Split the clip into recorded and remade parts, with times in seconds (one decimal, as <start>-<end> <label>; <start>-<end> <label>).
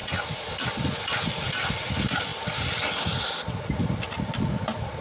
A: 0.0-5.0 recorded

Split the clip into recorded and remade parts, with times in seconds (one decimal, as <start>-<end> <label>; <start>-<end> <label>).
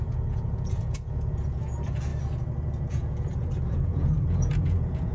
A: 0.0-2.1 remade; 2.1-2.9 recorded; 2.9-5.1 remade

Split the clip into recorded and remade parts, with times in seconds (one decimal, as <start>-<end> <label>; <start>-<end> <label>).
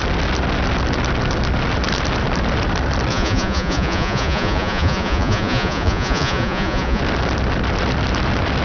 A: 0.0-3.1 recorded; 3.1-7.0 remade; 7.0-8.6 recorded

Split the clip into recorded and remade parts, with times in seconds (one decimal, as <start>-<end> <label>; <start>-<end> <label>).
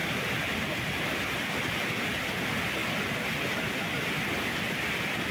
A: 0.0-5.3 recorded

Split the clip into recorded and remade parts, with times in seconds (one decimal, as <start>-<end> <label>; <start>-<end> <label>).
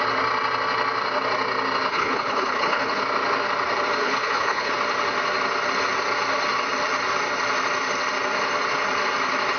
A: 0.0-1.9 recorded; 1.9-3.0 remade; 3.0-4.0 recorded; 4.0-4.7 remade; 4.7-9.6 recorded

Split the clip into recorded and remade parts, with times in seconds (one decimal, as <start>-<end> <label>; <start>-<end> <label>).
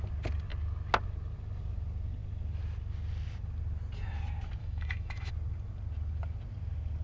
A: 0.0-4.6 recorded; 4.6-5.3 remade; 5.3-7.0 recorded